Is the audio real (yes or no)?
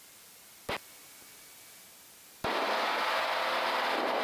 yes